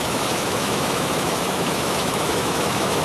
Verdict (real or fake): fake